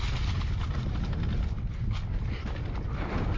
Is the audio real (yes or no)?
yes